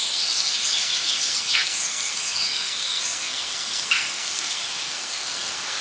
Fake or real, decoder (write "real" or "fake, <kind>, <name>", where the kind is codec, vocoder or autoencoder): fake, codec, SNAC